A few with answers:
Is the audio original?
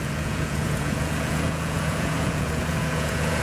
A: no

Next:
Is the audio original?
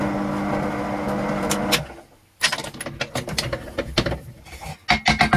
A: yes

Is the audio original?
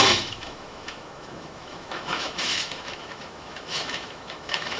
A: no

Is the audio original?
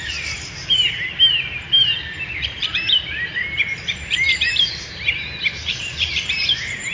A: no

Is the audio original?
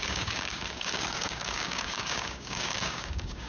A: no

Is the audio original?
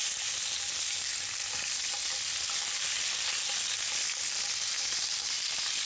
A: yes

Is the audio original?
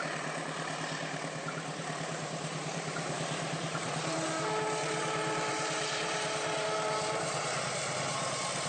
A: no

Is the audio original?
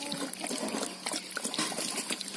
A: yes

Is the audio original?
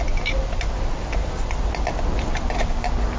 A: yes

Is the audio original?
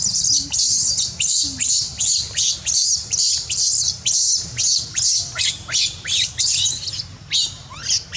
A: yes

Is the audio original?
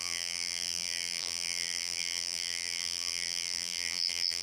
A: no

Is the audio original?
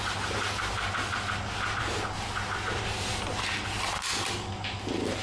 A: yes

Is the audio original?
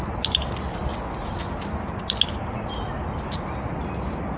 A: yes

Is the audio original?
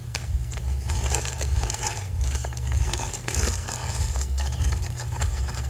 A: no